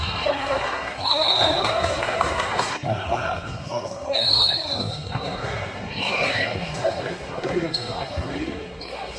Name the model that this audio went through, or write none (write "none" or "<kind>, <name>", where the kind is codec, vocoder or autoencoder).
codec, SNAC